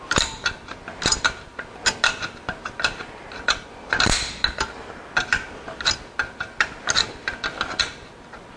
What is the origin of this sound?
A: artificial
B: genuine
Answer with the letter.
B